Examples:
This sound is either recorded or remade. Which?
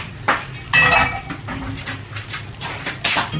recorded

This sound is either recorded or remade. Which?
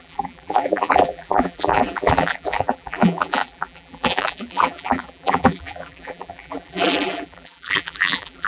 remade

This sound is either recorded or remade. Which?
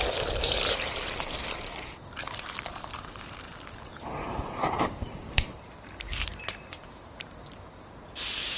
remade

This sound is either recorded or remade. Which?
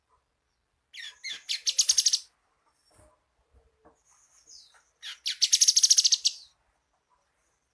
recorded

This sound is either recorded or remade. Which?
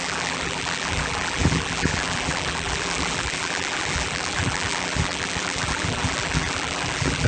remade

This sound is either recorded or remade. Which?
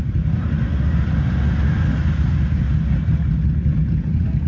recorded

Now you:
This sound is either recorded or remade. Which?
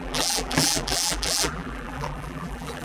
remade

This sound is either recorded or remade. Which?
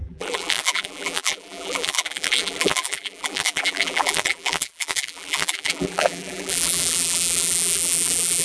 remade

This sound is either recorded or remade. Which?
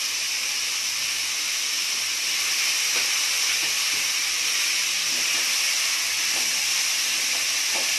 recorded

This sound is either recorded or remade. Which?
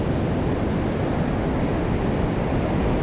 recorded